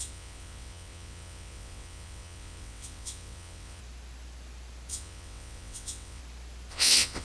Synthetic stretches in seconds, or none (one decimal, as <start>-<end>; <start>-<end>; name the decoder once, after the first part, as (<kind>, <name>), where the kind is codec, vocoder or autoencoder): 0.0-3.8 (vocoder, WaveNeXt); 4.9-6.2; 6.7-7.2